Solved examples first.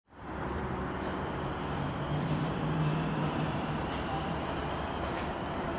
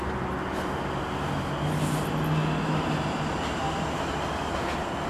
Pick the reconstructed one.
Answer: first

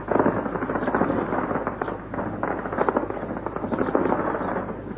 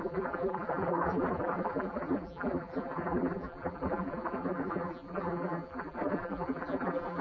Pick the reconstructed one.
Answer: second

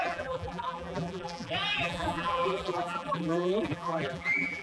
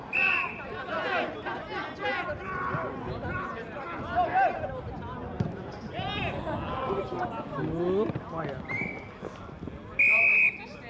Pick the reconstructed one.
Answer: first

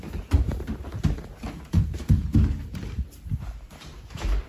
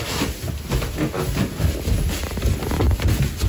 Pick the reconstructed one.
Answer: first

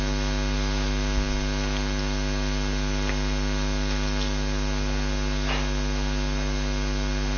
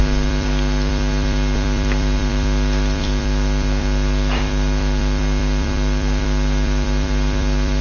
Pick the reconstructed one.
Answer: second